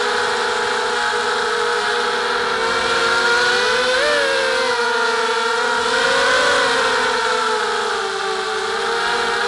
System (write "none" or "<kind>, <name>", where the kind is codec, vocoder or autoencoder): none